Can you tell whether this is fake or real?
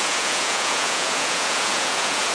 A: fake